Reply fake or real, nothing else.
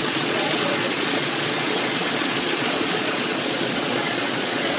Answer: fake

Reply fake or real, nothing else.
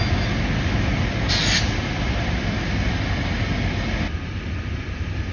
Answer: real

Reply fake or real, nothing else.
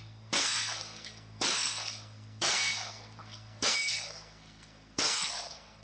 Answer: fake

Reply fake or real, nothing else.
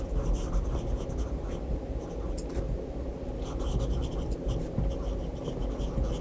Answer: real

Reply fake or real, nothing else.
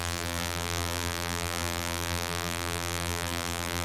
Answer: fake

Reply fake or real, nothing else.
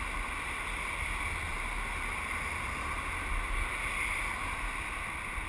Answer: real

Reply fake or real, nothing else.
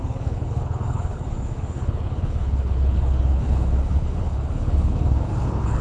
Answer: fake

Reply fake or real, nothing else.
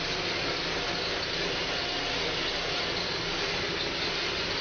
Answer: real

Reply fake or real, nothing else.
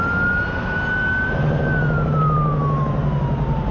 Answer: real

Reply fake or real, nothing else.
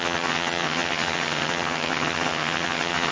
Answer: fake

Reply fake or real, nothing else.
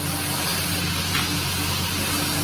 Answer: real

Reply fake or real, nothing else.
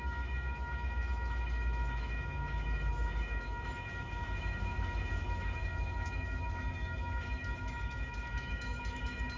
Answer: fake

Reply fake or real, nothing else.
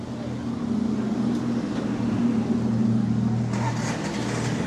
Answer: real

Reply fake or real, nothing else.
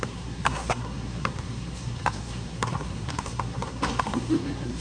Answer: fake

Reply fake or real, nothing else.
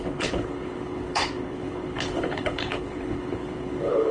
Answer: fake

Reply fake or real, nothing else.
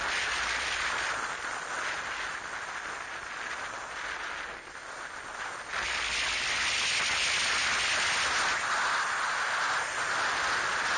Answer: real